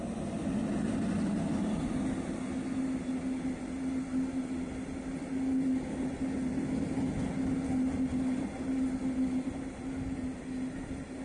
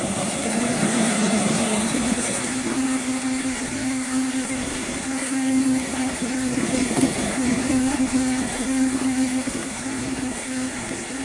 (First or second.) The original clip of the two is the first